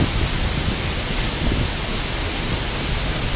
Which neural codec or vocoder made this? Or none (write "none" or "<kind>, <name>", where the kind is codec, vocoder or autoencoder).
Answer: none